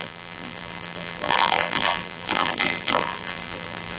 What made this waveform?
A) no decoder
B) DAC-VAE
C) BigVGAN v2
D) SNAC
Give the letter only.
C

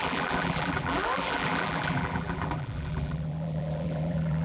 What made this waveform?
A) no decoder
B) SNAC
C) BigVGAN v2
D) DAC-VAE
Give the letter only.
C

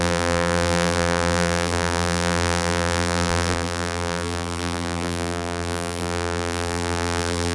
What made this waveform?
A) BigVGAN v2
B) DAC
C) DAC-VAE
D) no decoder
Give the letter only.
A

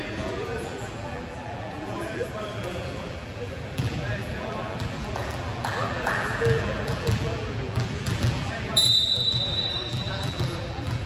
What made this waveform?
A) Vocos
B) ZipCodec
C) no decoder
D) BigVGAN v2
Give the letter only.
D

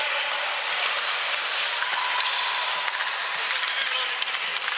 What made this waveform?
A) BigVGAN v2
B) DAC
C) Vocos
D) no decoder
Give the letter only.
A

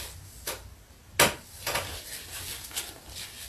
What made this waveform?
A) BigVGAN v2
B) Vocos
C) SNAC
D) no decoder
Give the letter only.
D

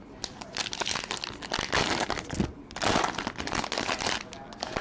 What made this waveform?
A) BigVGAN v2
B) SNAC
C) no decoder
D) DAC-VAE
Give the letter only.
C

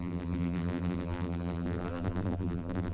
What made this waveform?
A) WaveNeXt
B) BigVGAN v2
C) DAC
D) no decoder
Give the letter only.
B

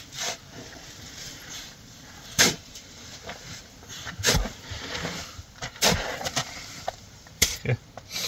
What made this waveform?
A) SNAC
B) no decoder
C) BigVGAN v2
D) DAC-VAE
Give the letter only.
C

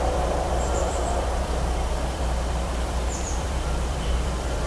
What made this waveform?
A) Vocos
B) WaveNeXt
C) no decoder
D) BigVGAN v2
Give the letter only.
D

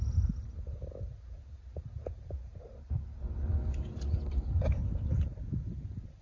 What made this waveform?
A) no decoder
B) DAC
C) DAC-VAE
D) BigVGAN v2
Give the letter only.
A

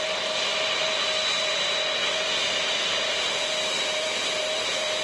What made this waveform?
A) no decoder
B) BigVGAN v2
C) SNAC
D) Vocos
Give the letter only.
B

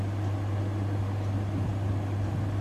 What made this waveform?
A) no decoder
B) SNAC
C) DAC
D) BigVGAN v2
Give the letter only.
A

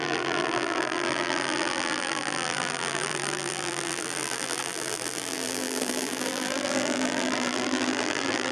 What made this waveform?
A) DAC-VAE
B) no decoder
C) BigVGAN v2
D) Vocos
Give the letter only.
C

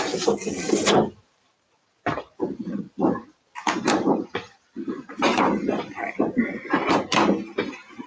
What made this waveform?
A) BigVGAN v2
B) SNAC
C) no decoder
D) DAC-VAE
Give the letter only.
A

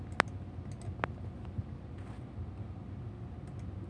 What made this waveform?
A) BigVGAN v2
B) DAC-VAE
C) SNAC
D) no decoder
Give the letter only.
D